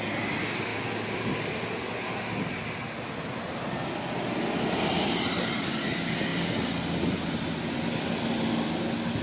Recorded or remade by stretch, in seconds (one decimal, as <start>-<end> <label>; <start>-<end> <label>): 0.0-9.2 recorded